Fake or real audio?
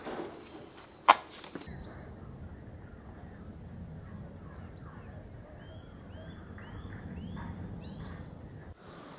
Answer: real